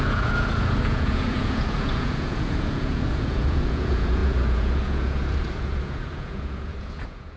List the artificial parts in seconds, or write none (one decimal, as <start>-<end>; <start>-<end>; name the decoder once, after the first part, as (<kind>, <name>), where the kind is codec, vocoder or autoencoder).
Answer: 0.0-7.4 (vocoder, Vocos)